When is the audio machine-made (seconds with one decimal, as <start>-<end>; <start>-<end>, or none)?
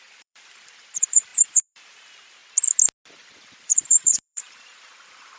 0.0-2.4; 3.6-5.4